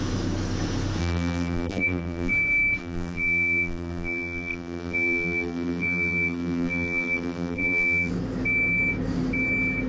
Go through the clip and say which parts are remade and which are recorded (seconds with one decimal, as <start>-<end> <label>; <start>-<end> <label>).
0.0-1.0 recorded; 1.0-2.3 remade; 2.3-2.8 recorded; 2.8-8.1 remade; 8.1-9.9 recorded